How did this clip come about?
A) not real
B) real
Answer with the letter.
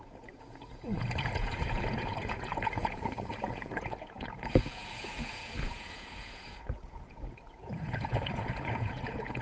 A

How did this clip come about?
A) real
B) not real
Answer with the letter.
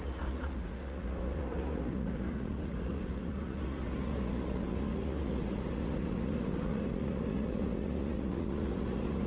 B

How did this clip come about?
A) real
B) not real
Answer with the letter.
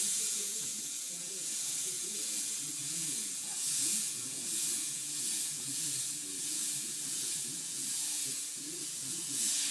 B